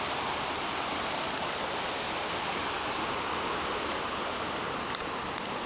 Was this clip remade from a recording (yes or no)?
no